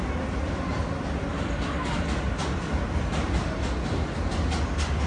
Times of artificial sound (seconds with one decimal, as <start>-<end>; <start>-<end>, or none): none

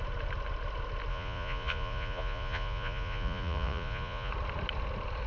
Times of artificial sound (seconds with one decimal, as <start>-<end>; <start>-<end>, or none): 1.1-4.3